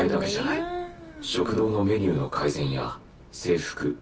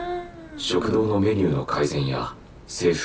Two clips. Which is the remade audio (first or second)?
first